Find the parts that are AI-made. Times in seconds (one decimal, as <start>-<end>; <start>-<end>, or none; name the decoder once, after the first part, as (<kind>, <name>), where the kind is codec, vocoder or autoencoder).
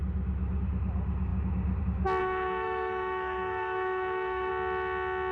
2.2-4.5 (codec, SNAC)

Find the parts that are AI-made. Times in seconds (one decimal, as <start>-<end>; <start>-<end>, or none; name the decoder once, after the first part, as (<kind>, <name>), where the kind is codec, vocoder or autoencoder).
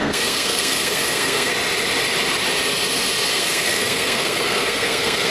0.0-1.5 (codec, SNAC); 3.3-5.3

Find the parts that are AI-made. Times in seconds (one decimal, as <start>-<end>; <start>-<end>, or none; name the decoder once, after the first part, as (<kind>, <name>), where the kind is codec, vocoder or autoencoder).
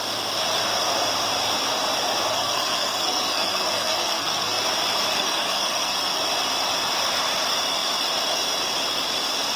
2.3-4.6 (codec, SNAC); 5.1-6.2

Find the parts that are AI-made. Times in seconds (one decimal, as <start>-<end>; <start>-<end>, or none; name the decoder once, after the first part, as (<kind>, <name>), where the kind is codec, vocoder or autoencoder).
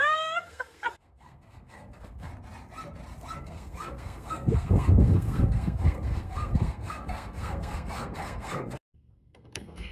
0.0-2.3 (codec, SNAC); 3.4-9.9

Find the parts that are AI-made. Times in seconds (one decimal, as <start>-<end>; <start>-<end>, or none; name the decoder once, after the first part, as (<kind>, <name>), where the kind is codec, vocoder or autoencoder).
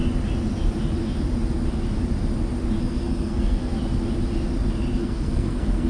2.8-3.7 (codec, SNAC); 5.0-5.9